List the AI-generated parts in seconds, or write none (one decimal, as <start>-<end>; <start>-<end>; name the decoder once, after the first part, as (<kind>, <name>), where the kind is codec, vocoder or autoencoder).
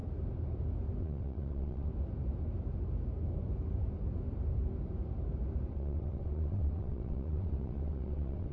1.0-1.9 (vocoder, WaveNeXt); 5.7-8.5